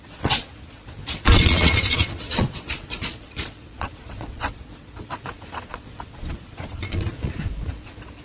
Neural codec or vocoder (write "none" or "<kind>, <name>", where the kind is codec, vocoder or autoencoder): vocoder, Vocos